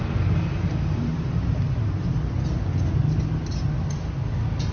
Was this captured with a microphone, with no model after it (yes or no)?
yes